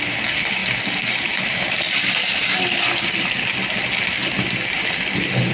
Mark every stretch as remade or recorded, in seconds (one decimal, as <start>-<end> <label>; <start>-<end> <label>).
0.0-5.5 remade